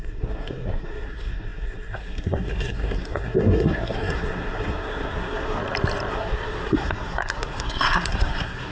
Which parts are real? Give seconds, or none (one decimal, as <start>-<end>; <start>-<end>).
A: 5.6-6.1